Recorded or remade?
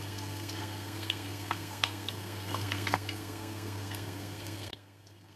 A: remade